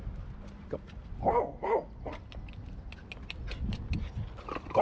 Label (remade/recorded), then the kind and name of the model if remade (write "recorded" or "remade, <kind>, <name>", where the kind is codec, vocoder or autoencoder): recorded